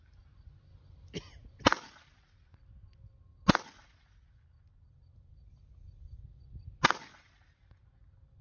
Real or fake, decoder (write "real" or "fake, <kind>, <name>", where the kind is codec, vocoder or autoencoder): real